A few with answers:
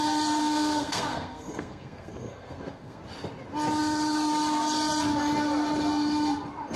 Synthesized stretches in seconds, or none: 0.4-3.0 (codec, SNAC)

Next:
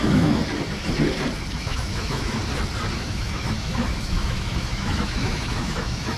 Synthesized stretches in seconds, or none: 0.0-0.4 (autoencoder, DAC-VAE); 1.5-2.4; 3.0-6.2

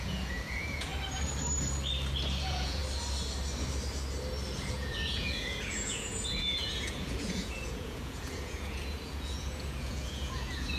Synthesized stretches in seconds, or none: 0.0-0.9 (vocoder, Vocos); 2.4-2.8; 4.7-10.8